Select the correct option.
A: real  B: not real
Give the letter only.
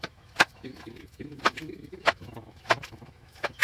B